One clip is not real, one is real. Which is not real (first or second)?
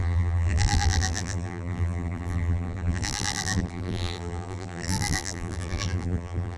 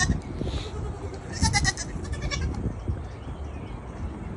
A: first